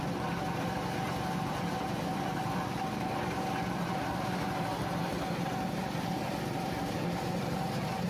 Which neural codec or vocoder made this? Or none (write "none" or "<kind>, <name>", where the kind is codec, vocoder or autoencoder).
vocoder, BigVGAN v2